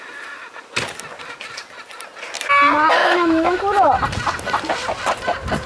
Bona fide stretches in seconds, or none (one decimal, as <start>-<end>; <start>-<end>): 0.0-3.0; 3.6-5.7